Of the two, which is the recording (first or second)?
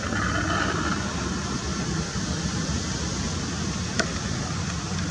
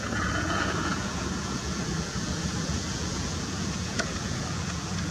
first